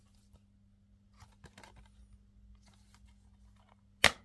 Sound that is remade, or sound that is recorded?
recorded